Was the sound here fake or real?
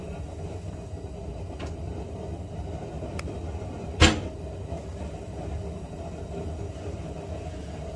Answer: real